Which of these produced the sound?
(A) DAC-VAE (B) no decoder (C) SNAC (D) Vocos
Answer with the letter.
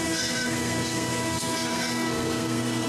C